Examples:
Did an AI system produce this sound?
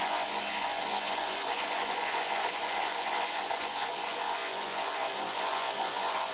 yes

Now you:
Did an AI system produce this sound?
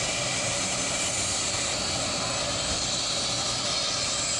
no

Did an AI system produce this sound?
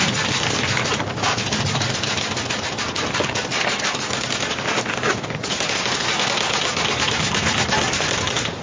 no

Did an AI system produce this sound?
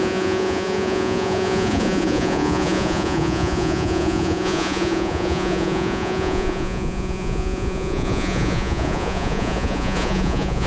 yes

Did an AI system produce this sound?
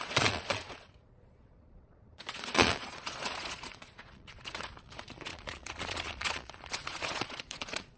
yes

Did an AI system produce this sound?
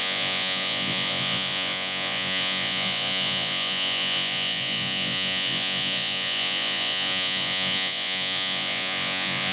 yes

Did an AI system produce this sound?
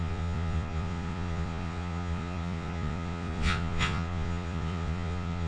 yes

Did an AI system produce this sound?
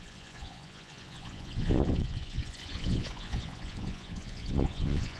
yes